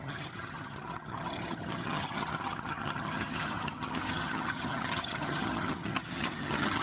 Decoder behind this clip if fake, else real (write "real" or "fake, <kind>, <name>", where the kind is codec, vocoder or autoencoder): fake, vocoder, HiFi-GAN